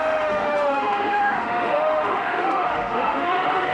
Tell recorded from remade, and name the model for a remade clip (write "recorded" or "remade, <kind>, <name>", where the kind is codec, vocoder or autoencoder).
remade, autoencoder, DAC-VAE